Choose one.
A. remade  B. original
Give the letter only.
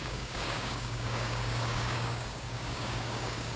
A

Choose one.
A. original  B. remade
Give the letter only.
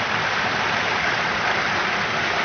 A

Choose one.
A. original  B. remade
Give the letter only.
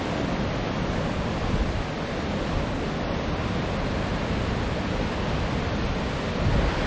A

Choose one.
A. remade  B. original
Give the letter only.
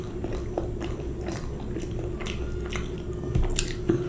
B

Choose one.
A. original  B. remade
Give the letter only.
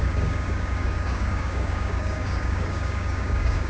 B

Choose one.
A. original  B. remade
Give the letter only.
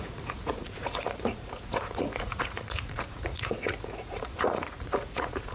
B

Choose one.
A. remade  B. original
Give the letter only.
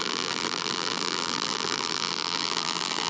A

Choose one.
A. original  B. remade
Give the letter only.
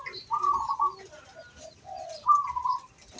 A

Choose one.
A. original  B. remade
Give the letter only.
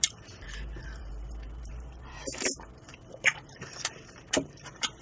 B